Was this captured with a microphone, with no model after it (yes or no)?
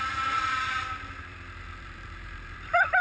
no